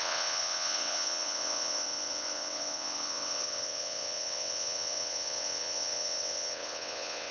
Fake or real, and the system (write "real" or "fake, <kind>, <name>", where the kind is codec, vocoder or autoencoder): fake, vocoder, WaveNeXt